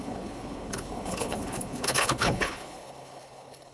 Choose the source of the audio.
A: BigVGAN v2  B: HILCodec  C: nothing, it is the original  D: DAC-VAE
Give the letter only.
B